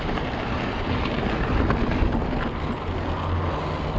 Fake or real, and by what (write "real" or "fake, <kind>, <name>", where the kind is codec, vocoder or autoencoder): real